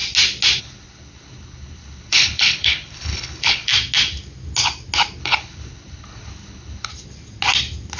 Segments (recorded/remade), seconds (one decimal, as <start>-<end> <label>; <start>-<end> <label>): 0.0-0.6 recorded; 0.6-3.7 remade; 3.7-5.2 recorded; 5.2-6.9 remade; 6.9-8.0 recorded